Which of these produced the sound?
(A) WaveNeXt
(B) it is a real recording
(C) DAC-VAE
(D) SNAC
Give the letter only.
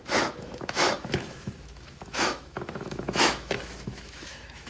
C